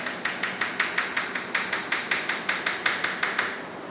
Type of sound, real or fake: real